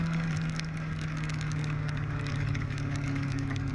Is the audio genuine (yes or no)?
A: no